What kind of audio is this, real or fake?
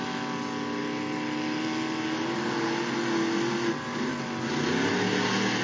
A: real